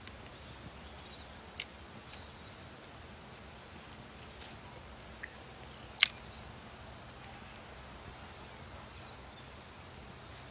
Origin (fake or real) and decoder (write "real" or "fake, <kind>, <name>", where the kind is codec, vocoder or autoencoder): real